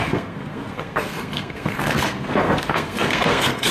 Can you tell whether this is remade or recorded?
remade